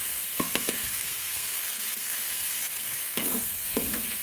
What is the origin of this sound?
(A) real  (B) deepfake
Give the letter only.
B